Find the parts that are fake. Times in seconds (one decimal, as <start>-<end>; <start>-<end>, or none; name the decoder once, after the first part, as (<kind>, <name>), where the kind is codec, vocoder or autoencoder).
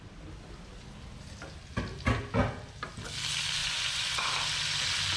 3.6-4.3 (vocoder, Vocos)